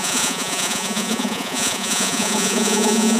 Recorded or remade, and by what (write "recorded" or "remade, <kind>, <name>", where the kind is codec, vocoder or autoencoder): remade, vocoder, Vocos